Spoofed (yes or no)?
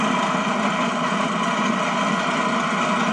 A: no